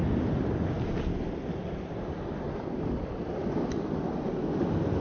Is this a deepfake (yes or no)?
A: no